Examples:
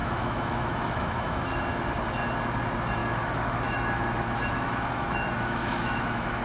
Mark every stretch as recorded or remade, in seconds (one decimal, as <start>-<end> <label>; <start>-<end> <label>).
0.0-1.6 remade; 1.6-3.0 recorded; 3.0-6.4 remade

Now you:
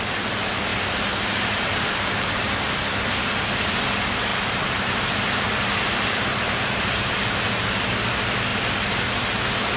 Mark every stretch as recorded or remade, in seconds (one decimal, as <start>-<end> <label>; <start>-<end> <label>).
0.0-0.7 recorded; 0.7-2.5 remade; 2.5-4.3 recorded; 4.3-7.2 remade; 7.2-9.8 recorded

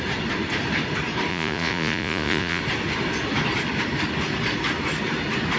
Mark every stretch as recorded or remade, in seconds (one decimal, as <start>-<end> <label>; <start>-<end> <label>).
0.0-1.3 recorded; 1.3-2.6 remade; 2.6-5.6 recorded

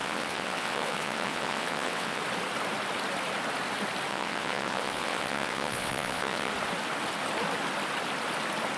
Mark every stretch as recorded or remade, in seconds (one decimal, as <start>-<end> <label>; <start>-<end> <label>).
0.0-2.2 remade; 2.2-4.1 recorded; 4.1-6.5 remade; 6.5-8.8 recorded

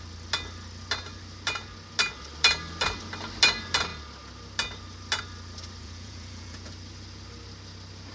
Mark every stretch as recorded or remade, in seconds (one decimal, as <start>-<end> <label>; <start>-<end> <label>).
0.0-5.8 recorded; 5.8-6.7 remade; 6.7-8.1 recorded

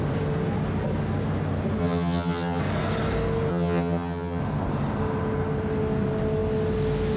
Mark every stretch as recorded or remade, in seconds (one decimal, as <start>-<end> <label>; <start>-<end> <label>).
0.0-1.8 recorded; 1.8-2.6 remade; 2.6-3.5 recorded; 3.5-4.4 remade; 4.4-7.2 recorded